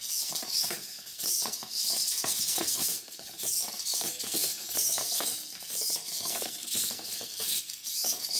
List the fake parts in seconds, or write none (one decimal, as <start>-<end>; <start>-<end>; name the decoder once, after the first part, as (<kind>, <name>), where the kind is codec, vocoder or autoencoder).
0.0-8.4 (codec, SNAC)